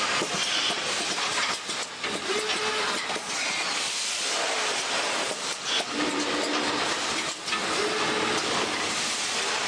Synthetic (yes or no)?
no